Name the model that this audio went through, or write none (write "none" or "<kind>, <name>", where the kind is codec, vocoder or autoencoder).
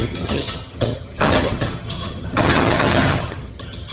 vocoder, HiFi-GAN